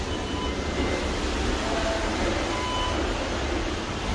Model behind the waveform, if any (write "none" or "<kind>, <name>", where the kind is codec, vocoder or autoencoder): none